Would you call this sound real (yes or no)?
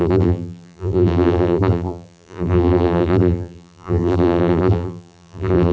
no